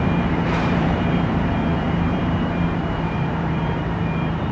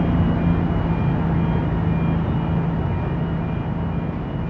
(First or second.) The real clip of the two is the second